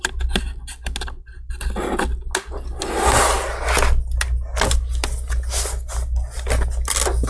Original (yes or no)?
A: yes